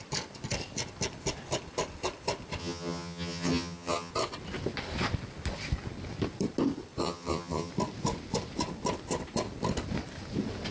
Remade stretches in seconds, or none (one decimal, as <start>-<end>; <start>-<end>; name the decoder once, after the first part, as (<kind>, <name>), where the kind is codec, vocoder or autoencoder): 2.6-4.1 (vocoder, HiFi-GAN); 7.0-7.7